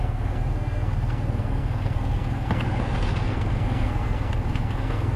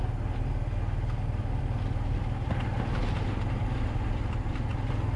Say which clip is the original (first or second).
second